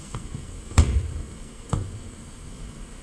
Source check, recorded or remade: remade